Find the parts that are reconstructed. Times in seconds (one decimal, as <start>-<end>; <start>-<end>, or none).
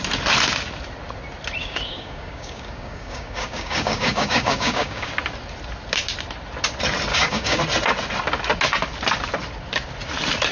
1.6-5.1; 7.1-7.6